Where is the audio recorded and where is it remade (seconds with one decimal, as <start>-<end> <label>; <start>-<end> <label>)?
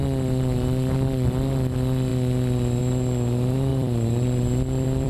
0.0-3.7 recorded; 3.7-5.1 remade